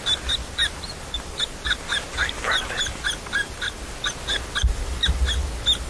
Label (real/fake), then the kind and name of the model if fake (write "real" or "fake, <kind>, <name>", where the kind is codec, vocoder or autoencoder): real